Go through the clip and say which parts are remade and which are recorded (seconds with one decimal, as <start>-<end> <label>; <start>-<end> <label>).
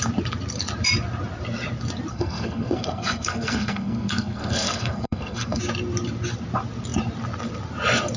0.0-2.1 recorded; 2.1-5.6 remade; 5.6-8.2 recorded